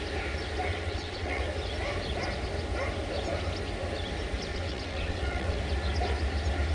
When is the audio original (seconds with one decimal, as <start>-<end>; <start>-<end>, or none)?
0.0-0.7; 1.4-4.5; 5.6-6.7